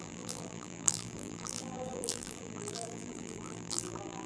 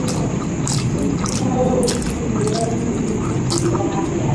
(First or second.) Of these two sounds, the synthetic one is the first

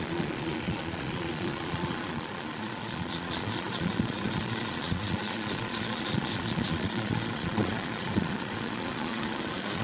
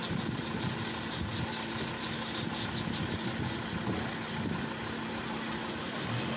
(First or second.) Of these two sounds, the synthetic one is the first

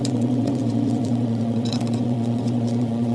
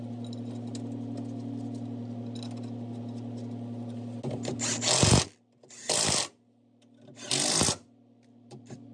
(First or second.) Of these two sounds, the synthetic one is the first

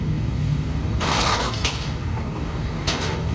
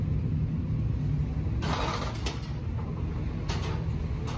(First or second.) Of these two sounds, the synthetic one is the first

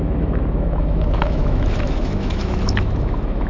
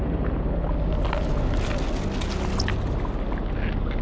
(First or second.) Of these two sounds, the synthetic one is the first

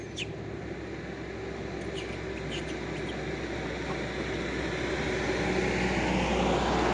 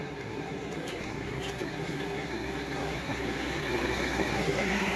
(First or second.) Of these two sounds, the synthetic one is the second